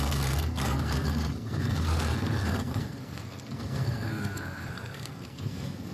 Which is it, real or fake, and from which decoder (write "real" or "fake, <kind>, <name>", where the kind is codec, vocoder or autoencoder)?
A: fake, codec, SNAC